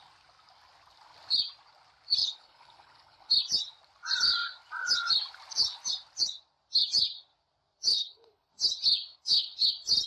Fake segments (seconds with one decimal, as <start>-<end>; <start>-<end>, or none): 2.2-3.3; 7.9-8.5; 9.2-9.7